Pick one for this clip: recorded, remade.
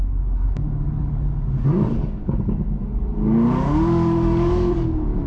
remade